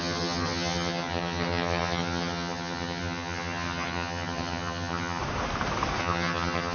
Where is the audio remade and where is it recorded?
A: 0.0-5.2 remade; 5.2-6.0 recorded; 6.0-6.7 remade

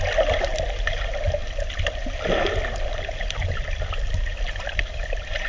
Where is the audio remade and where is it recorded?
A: 0.0-5.5 recorded

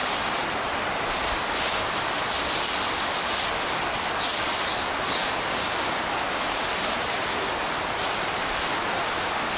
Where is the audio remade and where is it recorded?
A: 0.0-3.8 remade; 3.8-4.3 recorded; 4.3-8.4 remade; 8.4-9.6 recorded

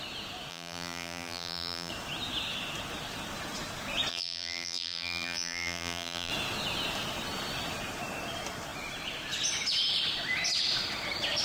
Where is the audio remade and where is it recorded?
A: 0.0-0.5 recorded; 0.5-1.9 remade; 1.9-4.1 recorded; 4.1-6.3 remade; 6.3-11.4 recorded

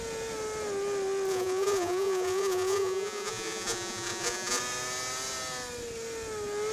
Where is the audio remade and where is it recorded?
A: 0.0-1.3 recorded; 1.3-4.6 remade; 4.6-6.7 recorded

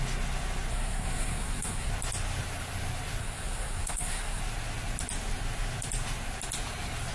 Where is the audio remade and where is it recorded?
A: 0.0-0.7 recorded; 0.7-1.9 remade; 1.9-3.2 recorded; 3.2-4.4 remade; 4.4-7.1 recorded

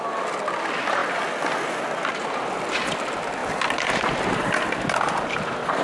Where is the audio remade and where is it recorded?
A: 0.0-5.8 recorded